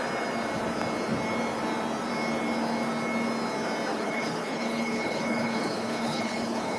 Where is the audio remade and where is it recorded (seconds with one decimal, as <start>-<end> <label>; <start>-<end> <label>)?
0.0-3.9 recorded; 3.9-6.8 remade